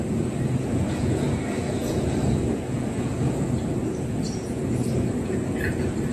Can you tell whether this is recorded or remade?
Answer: remade